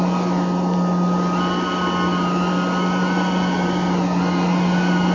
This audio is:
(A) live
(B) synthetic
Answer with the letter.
A